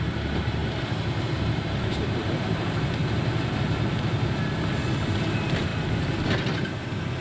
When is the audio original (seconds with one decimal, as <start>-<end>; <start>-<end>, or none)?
0.6-1.2; 3.0-5.0; 5.7-7.2